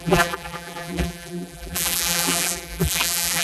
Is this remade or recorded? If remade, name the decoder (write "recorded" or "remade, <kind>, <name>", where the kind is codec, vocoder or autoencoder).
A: remade, vocoder, BigVGAN v2